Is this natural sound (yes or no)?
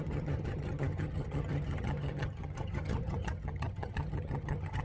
no